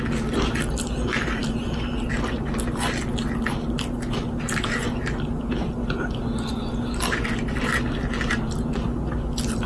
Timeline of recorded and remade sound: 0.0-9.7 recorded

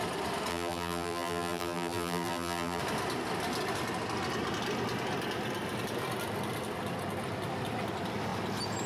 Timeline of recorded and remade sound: 0.0-0.5 recorded; 0.5-2.8 remade; 2.8-8.9 recorded

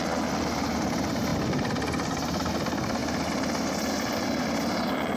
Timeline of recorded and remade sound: 0.0-5.2 recorded

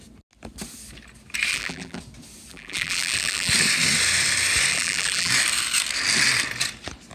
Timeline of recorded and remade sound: 0.0-1.5 recorded; 1.5-2.0 remade; 2.0-2.5 recorded; 2.5-3.5 remade; 3.5-4.7 recorded; 4.7-5.3 remade; 5.3-7.1 recorded

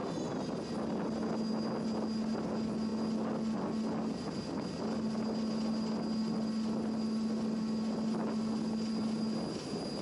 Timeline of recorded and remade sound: 0.0-10.0 recorded